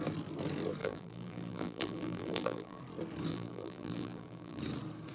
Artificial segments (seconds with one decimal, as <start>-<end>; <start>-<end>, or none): 0.8-2.8; 3.3-4.6